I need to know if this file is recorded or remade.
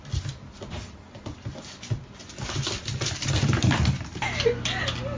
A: recorded